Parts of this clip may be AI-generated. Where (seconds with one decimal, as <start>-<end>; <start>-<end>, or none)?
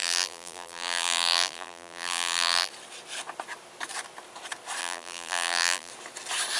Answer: 0.0-2.7; 4.8-5.9